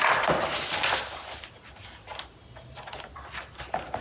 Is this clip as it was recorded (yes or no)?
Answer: yes